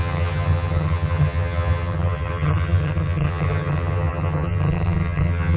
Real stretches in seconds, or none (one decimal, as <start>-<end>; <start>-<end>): none